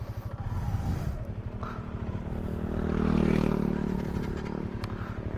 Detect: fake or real real